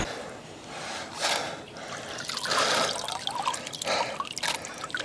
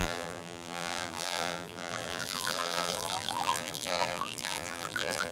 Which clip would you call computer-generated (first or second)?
second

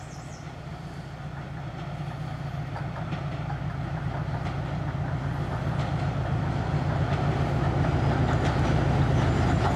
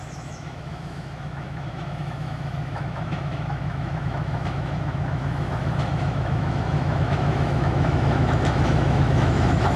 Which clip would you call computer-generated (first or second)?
second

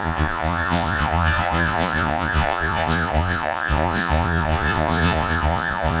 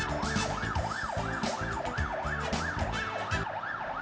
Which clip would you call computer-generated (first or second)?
first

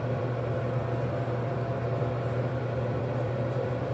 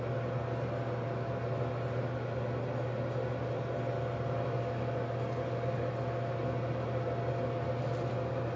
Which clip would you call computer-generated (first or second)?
first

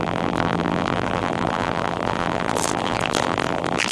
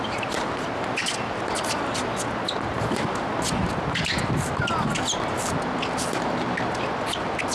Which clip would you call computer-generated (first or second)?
first